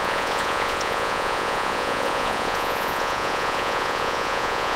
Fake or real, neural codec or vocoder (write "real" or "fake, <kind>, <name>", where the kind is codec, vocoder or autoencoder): fake, vocoder, Vocos